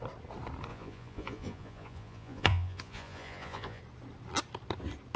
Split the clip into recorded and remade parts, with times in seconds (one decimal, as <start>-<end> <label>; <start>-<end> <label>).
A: 0.0-0.7 recorded; 0.7-3.8 remade; 3.8-5.2 recorded